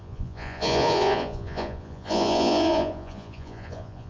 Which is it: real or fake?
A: fake